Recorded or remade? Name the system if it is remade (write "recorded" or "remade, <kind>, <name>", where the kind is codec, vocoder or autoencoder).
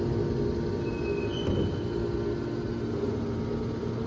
recorded